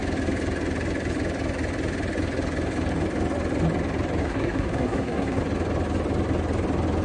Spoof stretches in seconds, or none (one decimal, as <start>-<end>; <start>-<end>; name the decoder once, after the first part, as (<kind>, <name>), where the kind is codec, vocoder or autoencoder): 4.2-5.4 (codec, SNAC)